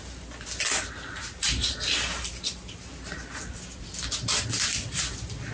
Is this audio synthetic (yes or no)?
no